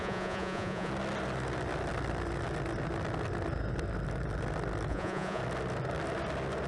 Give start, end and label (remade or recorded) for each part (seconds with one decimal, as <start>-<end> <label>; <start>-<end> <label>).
0.0-0.9 remade; 0.9-4.9 recorded; 4.9-5.4 remade; 5.4-6.7 recorded